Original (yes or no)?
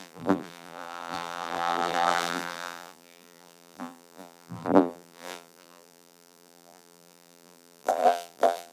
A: no